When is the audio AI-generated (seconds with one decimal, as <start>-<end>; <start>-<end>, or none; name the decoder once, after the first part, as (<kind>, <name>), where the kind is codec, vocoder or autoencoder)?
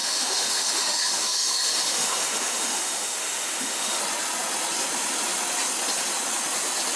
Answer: 0.0-4.0 (autoencoder, DAC-VAE)